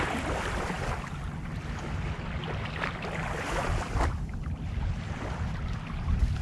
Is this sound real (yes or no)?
yes